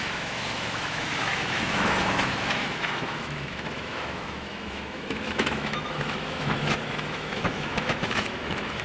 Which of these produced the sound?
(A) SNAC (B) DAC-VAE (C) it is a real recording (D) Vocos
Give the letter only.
B